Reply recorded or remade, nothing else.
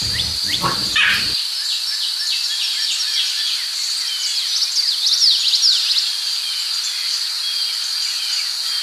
recorded